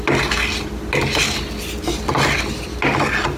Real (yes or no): yes